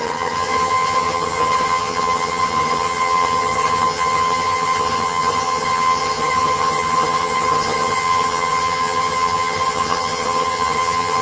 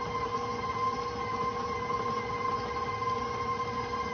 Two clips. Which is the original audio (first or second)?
second